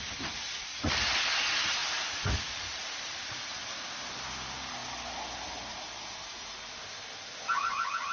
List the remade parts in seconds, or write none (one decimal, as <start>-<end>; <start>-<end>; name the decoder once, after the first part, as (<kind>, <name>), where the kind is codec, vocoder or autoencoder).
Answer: none